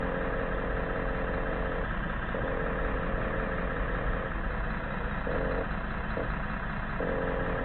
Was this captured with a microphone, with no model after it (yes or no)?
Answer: yes